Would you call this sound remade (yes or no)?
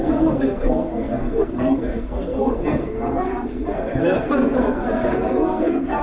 yes